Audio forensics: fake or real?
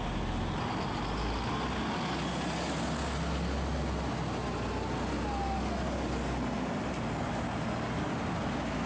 real